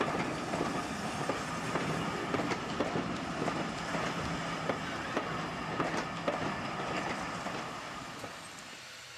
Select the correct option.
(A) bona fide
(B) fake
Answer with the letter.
A